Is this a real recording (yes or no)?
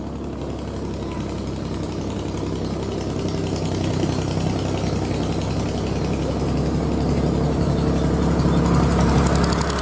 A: yes